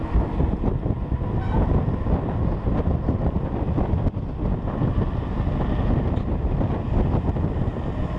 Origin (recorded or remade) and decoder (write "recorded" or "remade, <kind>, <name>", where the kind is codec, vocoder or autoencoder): recorded